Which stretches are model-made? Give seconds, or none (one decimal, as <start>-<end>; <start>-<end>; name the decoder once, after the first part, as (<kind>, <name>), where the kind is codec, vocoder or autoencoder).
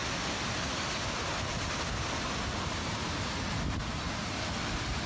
none